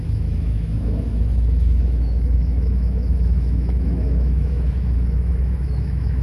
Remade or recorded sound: remade